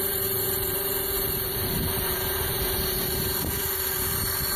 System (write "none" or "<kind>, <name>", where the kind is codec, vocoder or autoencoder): vocoder, BigVGAN v2